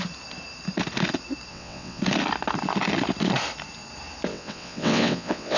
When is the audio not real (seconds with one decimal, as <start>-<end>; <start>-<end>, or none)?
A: 1.5-2.0; 4.3-5.6

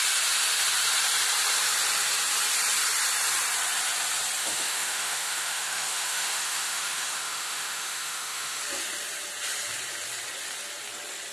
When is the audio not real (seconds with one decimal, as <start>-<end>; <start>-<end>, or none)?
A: 4.4-8.6

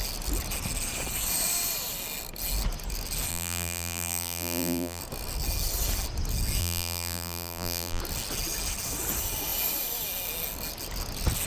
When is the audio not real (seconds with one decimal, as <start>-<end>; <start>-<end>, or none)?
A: 3.3-5.0; 6.6-8.0

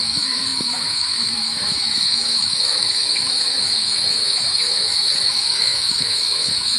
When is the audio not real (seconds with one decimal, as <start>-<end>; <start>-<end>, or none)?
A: 0.0-6.8

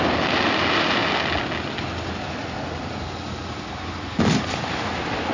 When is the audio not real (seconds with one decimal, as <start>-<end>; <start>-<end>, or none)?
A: none

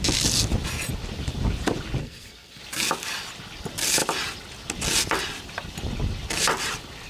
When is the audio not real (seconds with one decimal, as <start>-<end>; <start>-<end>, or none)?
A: 2.0-2.6

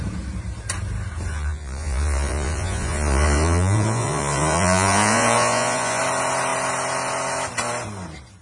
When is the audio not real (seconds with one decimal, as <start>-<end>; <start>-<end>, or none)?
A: 1.3-6.0